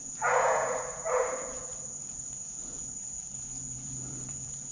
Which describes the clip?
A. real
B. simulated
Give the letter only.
B